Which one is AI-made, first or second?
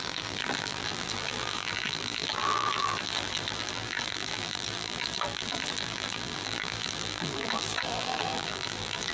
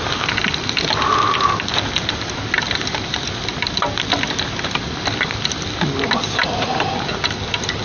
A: first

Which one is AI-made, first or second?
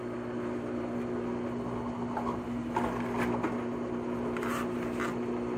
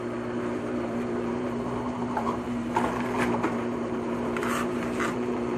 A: second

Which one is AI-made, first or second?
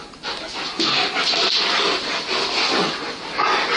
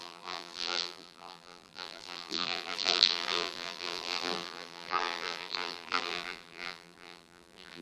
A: second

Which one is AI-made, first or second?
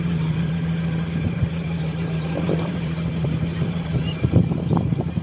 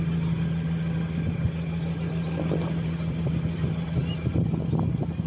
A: first